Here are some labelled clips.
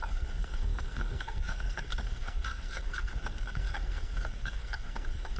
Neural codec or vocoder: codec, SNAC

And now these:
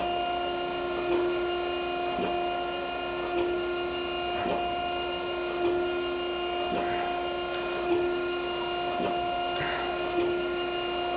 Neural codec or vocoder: none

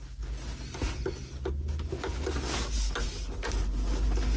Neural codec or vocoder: none